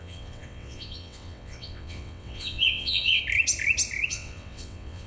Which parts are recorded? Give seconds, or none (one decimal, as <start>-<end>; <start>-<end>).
3.2-4.1